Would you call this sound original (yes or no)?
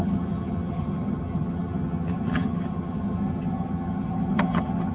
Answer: no